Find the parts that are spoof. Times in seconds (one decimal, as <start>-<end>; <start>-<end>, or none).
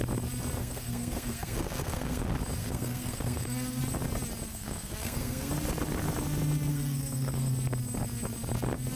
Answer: 0.6-2.2; 2.6-3.8; 4.5-5.5; 6.7-7.5